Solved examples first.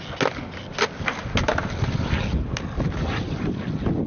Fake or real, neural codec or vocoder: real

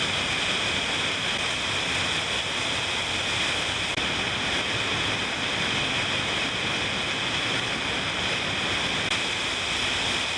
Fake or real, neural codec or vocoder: real